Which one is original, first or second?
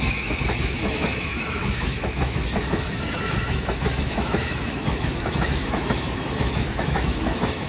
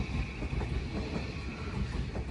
second